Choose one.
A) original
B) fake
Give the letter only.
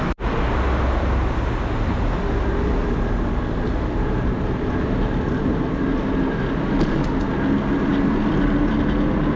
A